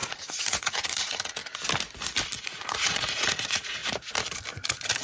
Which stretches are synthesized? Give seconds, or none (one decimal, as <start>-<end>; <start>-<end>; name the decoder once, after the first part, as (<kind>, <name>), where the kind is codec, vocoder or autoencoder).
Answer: 0.0-1.4 (vocoder, Vocos); 2.4-3.8; 4.5-5.0